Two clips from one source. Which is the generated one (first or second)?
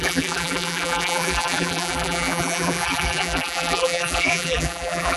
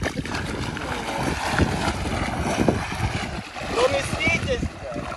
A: first